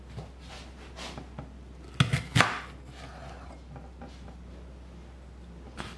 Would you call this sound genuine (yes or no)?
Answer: yes